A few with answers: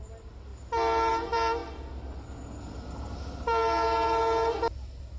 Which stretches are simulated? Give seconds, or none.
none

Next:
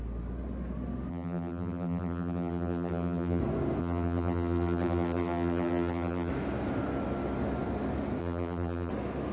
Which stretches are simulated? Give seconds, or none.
1.1-3.4 (vocoder, BigVGAN v2); 3.8-6.3; 8.2-8.9